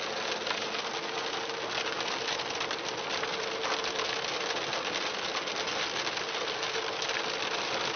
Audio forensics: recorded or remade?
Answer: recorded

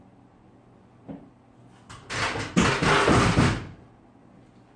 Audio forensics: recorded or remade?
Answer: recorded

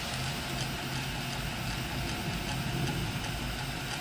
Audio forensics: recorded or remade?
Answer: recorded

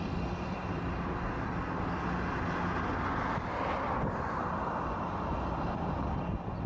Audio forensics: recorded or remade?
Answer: recorded